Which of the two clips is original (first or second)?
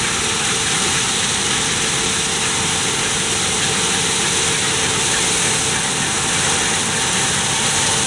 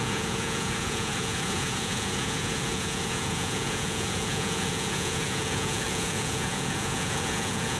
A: first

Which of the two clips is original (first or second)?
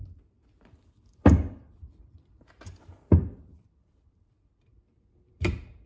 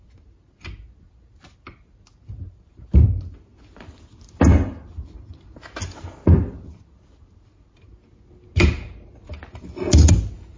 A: second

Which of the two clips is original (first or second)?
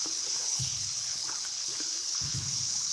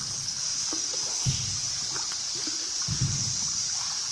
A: second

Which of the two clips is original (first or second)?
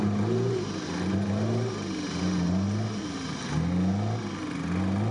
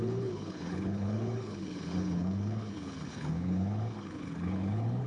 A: first